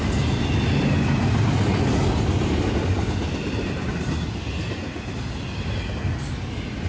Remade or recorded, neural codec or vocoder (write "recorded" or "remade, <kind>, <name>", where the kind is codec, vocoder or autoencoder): recorded